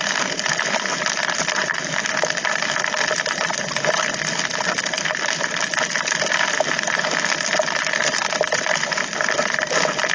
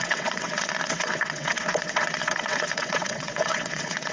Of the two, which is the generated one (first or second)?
second